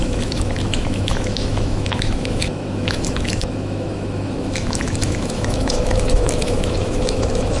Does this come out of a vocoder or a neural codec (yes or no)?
yes